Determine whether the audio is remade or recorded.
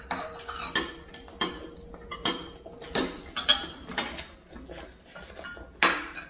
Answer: recorded